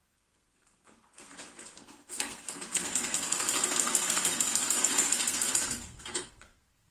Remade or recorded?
remade